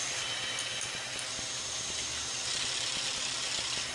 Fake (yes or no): no